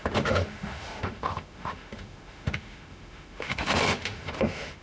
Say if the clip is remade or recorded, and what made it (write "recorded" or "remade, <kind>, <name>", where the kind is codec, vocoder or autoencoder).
remade, autoencoder, DAC-VAE